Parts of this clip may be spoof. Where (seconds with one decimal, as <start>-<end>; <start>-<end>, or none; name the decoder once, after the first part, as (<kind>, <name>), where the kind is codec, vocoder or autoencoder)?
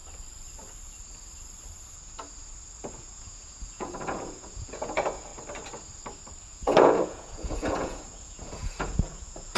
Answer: 2.9-5.3 (vocoder, Vocos); 6.4-9.6